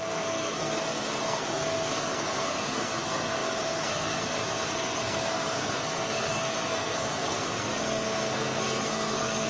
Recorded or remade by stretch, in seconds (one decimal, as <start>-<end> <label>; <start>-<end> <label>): 0.0-9.5 remade